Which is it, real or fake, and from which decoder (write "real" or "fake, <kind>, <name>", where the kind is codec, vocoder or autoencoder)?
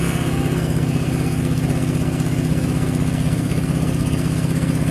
fake, codec, SNAC